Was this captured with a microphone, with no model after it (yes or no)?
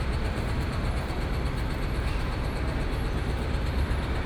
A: no